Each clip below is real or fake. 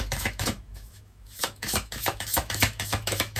fake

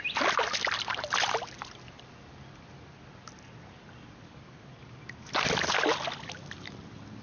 real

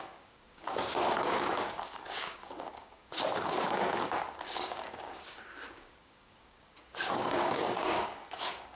fake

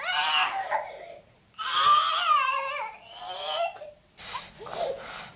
real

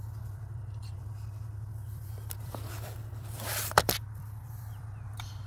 fake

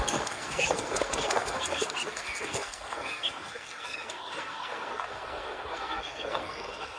fake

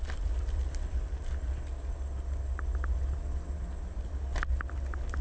real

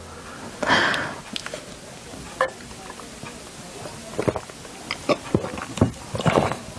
real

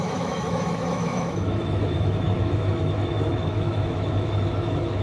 fake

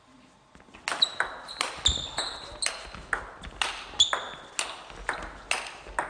real